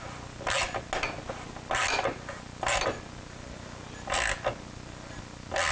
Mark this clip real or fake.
real